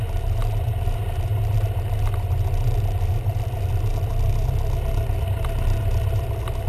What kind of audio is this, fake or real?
real